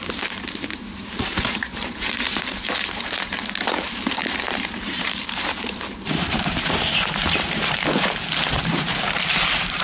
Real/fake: fake